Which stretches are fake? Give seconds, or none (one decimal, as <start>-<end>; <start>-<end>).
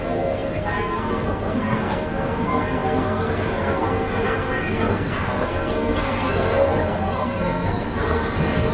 0.0-8.2